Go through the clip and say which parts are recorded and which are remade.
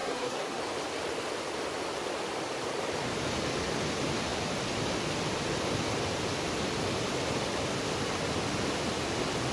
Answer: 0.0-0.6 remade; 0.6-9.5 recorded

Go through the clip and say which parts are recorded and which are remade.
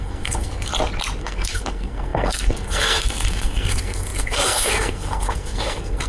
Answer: 0.0-0.7 remade; 0.7-1.2 recorded; 1.2-6.1 remade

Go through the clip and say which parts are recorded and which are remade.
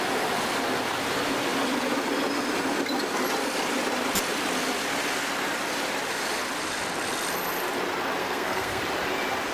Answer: 0.0-8.2 recorded; 8.2-8.8 remade; 8.8-9.5 recorded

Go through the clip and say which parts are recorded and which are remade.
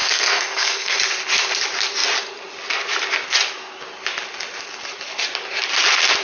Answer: 0.0-1.0 remade; 1.0-6.2 recorded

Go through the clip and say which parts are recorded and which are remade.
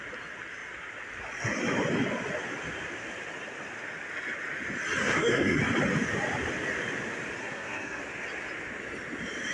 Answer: 0.0-5.0 recorded; 5.0-5.6 remade; 5.6-7.4 recorded; 7.4-8.0 remade; 8.0-9.5 recorded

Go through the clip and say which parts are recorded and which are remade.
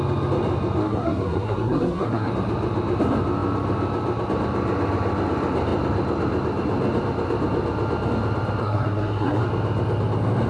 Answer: 0.0-0.8 recorded; 0.8-2.3 remade; 2.3-8.6 recorded; 8.6-9.4 remade; 9.4-10.5 recorded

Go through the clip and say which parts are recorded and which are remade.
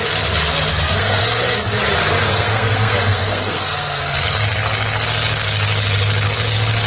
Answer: 0.0-0.7 recorded; 0.7-1.2 remade; 1.2-2.3 recorded; 2.3-4.1 remade; 4.1-6.9 recorded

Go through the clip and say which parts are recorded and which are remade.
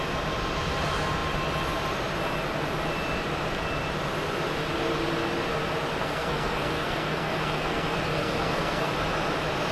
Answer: 0.0-5.9 recorded; 5.9-8.9 remade; 8.9-9.7 recorded